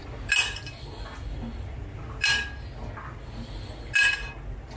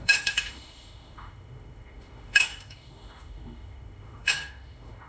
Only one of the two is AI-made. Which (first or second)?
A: second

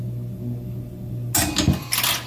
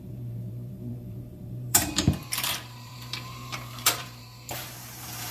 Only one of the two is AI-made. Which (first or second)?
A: second